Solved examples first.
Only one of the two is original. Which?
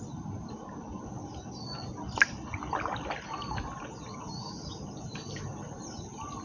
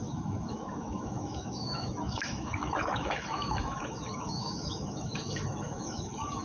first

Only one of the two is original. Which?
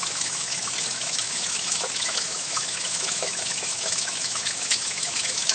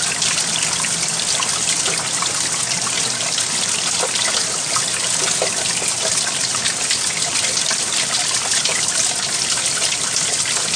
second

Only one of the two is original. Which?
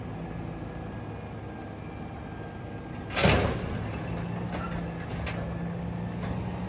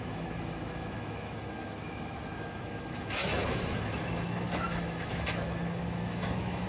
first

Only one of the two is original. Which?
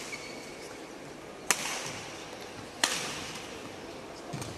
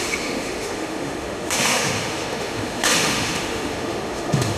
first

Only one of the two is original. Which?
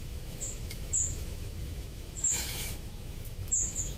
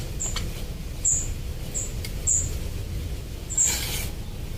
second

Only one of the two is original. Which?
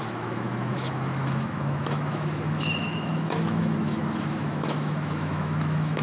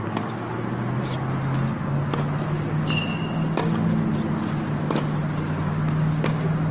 second